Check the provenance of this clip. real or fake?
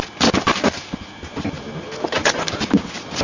real